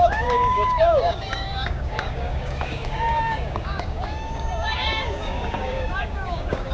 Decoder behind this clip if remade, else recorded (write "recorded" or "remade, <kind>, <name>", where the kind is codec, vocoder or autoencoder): remade, codec, DAC